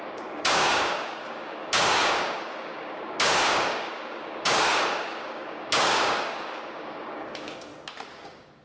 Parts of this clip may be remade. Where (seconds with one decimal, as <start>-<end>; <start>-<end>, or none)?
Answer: 0.0-7.7; 8.2-8.6